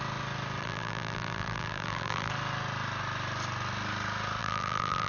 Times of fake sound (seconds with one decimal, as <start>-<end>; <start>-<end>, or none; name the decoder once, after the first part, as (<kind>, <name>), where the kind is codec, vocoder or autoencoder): 0.6-2.3 (vocoder, BigVGAN v2); 4.4-5.1